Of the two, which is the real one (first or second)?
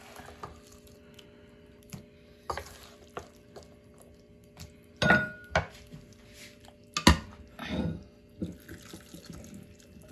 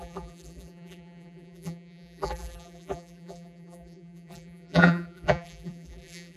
first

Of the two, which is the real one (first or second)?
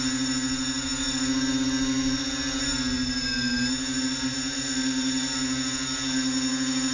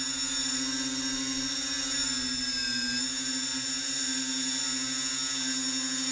second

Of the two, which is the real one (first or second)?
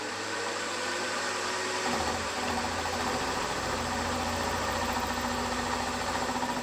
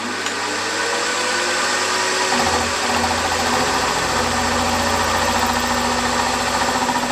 second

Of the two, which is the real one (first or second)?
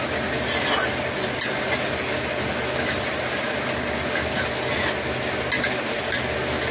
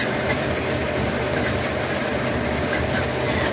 first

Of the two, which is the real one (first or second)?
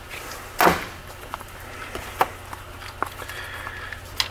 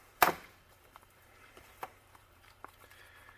first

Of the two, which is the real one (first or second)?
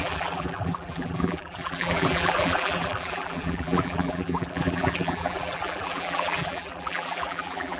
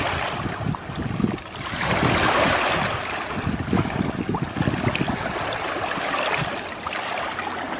second